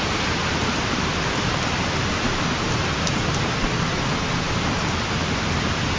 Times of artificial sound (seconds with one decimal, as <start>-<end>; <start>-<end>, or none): 0.0-3.9; 4.6-6.0